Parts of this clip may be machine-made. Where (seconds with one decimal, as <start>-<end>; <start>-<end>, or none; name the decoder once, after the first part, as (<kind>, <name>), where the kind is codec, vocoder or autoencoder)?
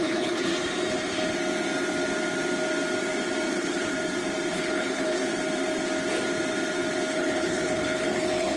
0.0-0.5 (codec, HILCodec); 3.5-3.9; 4.5-5.3; 7.1-8.6